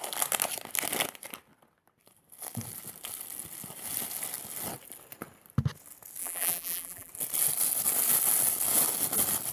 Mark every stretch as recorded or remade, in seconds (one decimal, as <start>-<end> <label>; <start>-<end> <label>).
0.0-6.2 recorded; 6.2-7.1 remade; 7.1-9.5 recorded